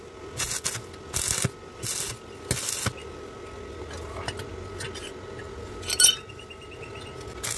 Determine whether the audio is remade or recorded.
recorded